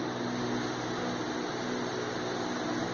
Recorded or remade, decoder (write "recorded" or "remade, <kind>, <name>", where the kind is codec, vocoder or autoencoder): recorded